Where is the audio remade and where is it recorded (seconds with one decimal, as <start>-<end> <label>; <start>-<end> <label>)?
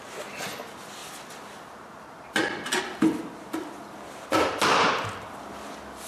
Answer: 0.0-1.0 recorded; 1.0-2.8 remade; 2.8-6.1 recorded